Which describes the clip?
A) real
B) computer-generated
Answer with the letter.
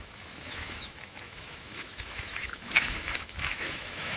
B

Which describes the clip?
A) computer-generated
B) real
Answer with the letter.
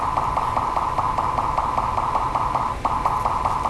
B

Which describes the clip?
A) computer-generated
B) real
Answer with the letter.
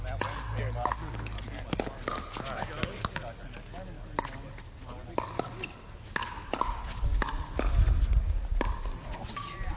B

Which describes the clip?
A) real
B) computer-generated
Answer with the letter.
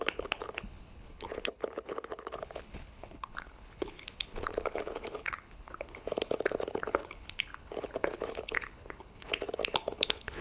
B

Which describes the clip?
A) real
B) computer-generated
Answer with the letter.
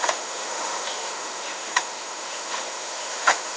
B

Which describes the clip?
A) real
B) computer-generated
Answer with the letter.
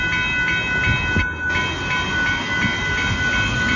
A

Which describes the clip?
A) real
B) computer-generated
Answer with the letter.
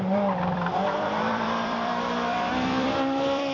B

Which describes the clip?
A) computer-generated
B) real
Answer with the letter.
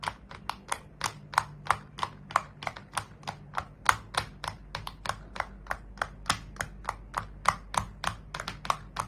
B